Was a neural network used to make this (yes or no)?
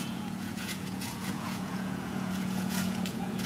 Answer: yes